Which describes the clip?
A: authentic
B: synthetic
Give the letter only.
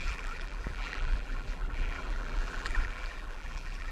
B